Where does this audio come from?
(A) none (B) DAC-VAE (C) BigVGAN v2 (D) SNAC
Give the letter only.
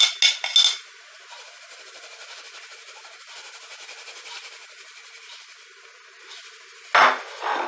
A